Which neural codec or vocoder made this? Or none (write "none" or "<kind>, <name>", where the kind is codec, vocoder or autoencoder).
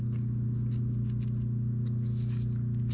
none